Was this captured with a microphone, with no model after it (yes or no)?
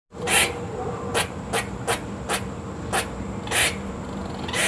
yes